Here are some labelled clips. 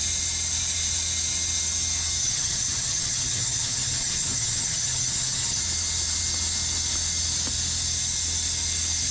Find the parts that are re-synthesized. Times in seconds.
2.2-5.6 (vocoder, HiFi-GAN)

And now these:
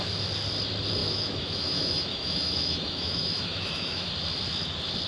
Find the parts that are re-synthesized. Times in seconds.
1.0-4.1 (autoencoder, DAC-VAE)

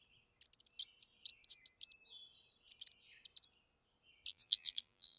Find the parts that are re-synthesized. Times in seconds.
4.3-5.2 (vocoder, BigVGAN v2)

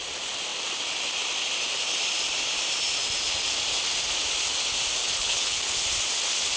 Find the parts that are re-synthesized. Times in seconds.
5.0-5.8 (codec, HILCodec)

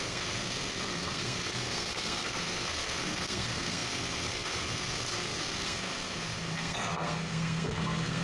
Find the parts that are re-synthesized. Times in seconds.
0.0-8.2 (codec, SNAC)